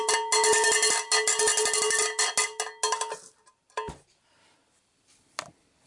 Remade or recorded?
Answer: recorded